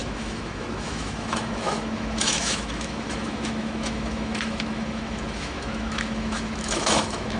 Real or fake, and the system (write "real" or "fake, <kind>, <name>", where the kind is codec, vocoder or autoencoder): fake, autoencoder, DAC-VAE